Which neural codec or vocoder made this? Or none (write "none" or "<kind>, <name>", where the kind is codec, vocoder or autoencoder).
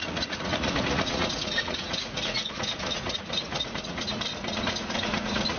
vocoder, Vocos